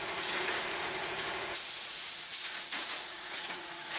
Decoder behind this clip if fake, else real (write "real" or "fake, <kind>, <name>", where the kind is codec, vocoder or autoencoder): fake, vocoder, Vocos